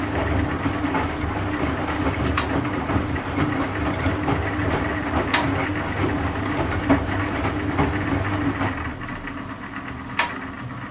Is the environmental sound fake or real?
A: real